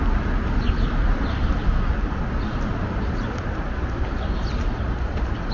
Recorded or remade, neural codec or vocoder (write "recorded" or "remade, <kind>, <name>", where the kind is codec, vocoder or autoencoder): recorded